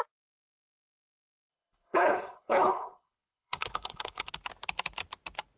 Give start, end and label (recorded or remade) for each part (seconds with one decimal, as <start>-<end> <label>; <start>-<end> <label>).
0.0-1.5 recorded; 1.5-4.3 remade; 4.3-5.6 recorded